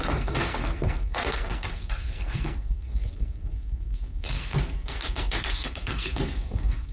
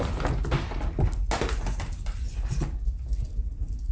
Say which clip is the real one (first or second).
second